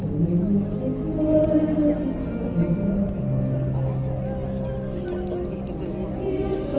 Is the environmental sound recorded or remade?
recorded